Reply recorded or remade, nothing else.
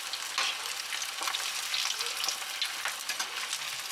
recorded